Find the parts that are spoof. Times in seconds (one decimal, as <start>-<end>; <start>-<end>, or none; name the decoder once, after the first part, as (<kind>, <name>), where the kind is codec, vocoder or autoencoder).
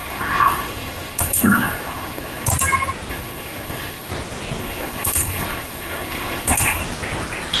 0.0-2.5 (codec, SNAC); 3.1-4.1; 4.6-6.8